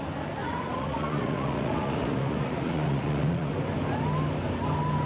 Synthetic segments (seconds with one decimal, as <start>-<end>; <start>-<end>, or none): 0.4-3.5